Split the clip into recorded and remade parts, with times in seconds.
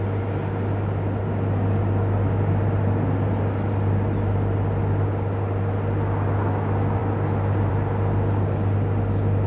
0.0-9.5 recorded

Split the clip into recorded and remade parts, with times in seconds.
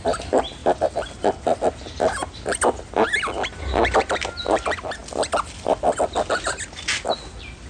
0.0-7.7 recorded